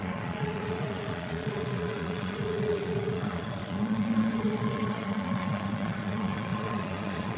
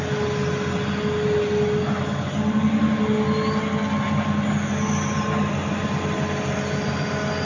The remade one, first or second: first